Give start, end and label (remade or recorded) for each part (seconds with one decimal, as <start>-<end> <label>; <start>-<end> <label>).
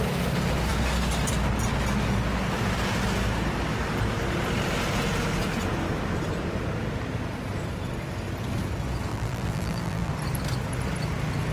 0.0-9.1 recorded; 9.1-10.1 remade; 10.1-11.5 recorded